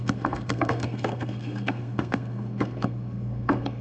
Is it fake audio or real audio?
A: fake